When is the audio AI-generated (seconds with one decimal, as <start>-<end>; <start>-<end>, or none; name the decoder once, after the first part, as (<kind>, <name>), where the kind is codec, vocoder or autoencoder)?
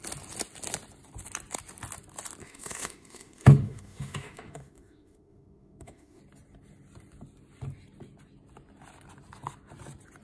2.4-6.2 (autoencoder, DAC-VAE)